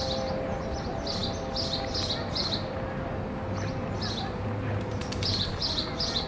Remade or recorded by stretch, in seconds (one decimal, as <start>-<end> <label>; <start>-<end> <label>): 0.0-6.3 recorded